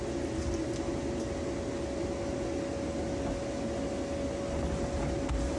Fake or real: real